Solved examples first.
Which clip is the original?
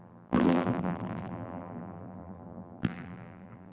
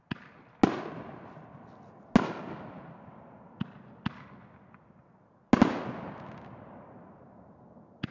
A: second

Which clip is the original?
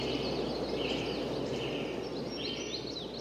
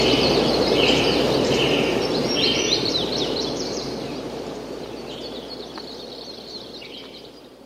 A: first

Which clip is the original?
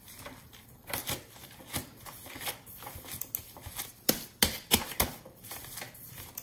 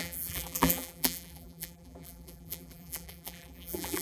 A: first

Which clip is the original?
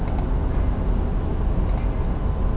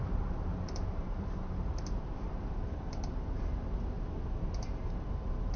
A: first